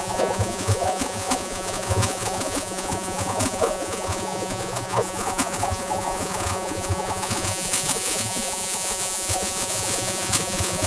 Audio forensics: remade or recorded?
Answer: remade